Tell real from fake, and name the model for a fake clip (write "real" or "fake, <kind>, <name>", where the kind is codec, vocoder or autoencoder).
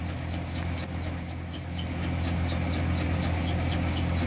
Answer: real